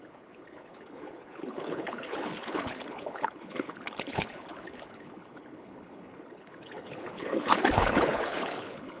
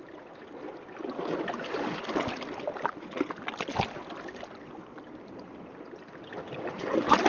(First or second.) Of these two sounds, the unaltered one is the second